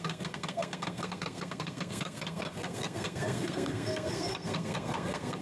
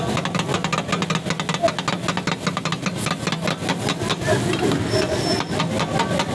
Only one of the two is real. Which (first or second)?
second